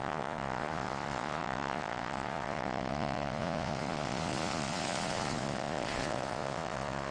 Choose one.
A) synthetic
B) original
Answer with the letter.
A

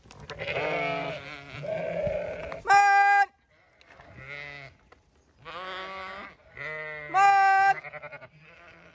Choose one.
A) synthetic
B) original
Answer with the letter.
B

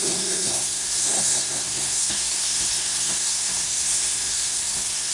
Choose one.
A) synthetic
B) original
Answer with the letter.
A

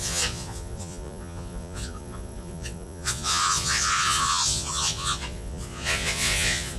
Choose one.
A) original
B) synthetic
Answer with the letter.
B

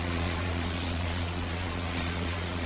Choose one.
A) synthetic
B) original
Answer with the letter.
A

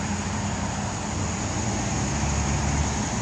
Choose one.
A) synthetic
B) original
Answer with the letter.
B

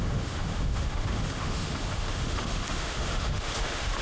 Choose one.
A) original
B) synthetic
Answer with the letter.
B